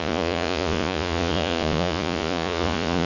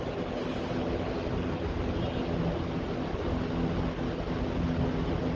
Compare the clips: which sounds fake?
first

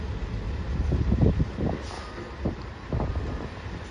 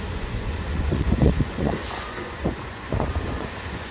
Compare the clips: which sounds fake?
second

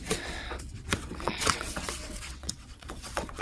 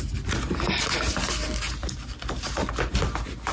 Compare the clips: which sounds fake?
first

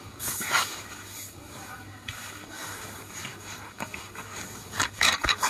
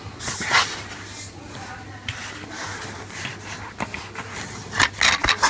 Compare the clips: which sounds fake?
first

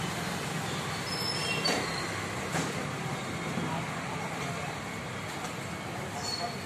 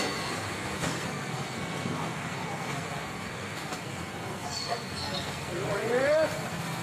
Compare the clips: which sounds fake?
second